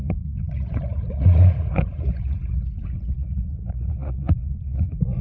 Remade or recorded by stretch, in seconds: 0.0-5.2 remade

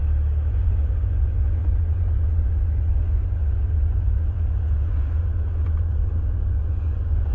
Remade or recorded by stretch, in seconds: 0.0-0.5 recorded; 0.5-7.3 remade

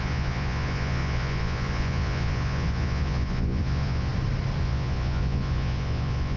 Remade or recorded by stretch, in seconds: 0.0-4.1 remade; 4.1-4.6 recorded; 4.6-6.4 remade

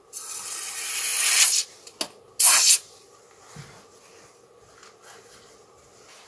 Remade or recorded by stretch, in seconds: 0.0-6.3 recorded

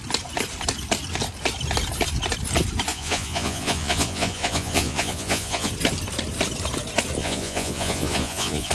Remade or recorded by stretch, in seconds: 0.0-2.9 recorded; 2.9-5.7 remade; 5.7-7.2 recorded; 7.2-8.7 remade

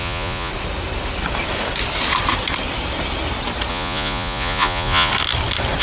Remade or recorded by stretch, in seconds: 0.0-0.5 remade; 0.5-3.7 recorded; 3.7-5.1 remade; 5.1-5.8 recorded

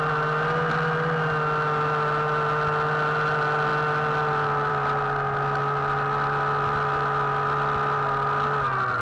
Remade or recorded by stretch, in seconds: 0.0-9.0 recorded